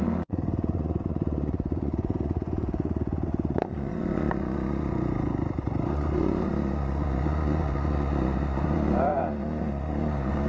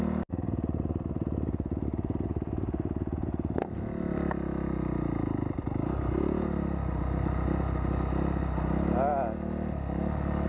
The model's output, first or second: first